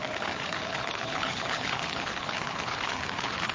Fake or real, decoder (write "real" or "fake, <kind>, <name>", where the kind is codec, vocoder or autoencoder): fake, codec, HILCodec